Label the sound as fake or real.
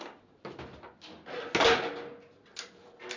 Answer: real